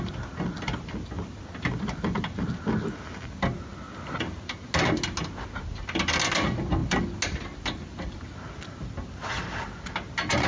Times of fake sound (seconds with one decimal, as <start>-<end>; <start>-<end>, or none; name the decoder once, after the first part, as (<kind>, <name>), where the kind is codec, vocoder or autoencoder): none